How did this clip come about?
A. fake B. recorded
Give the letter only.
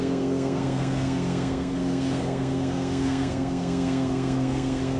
A